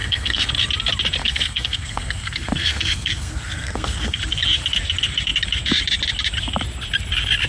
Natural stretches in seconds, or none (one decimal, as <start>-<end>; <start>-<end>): 0.5-1.2; 4.2-7.5